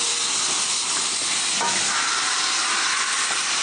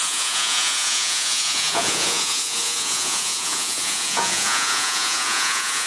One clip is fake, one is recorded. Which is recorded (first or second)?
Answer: first